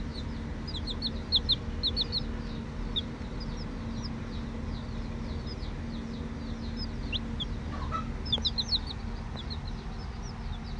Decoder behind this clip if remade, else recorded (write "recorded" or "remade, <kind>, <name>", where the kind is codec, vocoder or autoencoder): recorded